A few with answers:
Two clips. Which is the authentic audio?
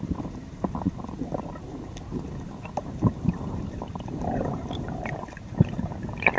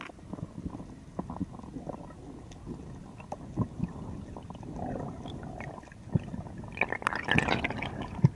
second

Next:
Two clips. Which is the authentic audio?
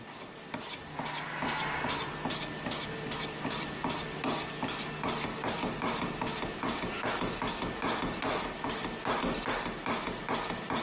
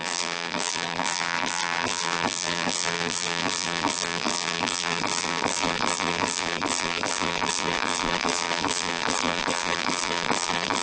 first